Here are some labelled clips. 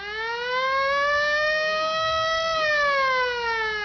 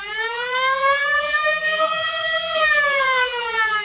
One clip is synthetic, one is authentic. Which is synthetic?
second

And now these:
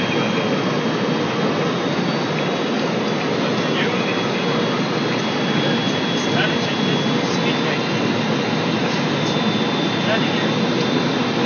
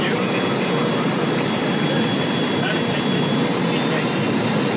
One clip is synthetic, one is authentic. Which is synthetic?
second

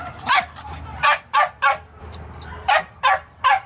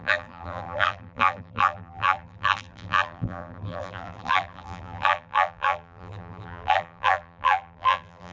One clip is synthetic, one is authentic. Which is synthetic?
second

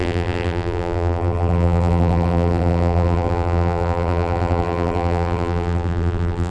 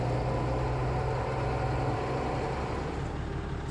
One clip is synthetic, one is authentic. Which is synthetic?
first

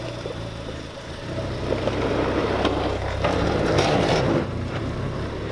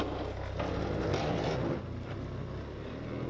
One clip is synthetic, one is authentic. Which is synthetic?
first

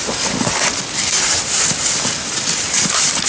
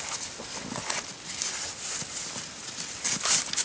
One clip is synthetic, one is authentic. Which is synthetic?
first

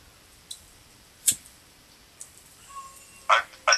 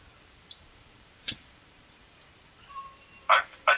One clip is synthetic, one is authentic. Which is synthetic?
second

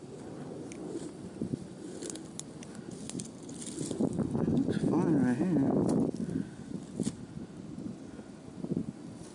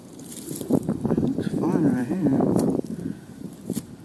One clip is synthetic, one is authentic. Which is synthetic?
second